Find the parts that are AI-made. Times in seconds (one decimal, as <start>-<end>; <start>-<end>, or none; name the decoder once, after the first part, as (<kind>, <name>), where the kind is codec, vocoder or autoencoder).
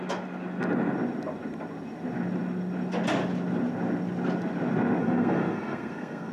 5.0-6.3 (codec, SNAC)